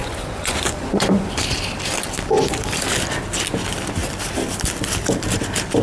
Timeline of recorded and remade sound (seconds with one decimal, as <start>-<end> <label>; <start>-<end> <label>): 0.0-1.4 remade; 1.4-5.8 recorded